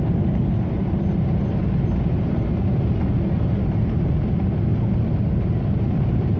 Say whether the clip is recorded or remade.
recorded